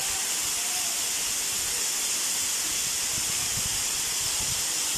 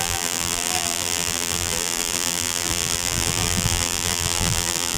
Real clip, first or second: first